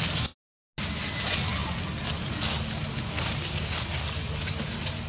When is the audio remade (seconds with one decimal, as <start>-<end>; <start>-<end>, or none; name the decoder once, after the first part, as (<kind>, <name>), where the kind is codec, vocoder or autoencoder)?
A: none